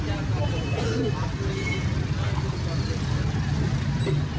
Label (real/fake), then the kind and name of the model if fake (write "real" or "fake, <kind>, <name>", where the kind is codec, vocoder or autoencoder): real